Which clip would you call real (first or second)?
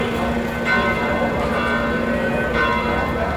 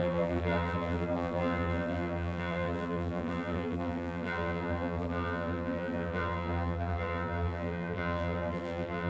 first